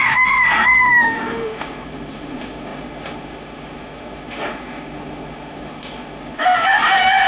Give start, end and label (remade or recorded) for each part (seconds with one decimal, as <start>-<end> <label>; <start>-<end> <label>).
0.0-7.3 remade